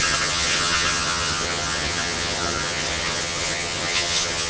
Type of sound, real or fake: fake